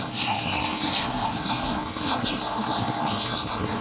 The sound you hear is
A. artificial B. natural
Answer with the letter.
A